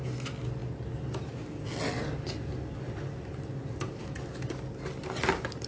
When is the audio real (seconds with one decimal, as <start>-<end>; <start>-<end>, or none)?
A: 0.0-5.7